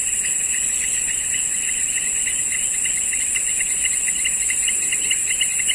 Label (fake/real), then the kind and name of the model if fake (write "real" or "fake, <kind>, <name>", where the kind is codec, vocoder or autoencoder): real